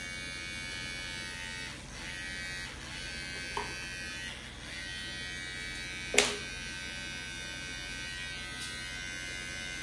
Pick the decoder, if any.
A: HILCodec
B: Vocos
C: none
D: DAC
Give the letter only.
C